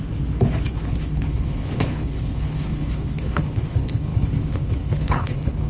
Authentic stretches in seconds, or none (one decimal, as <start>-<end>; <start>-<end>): 0.0-0.7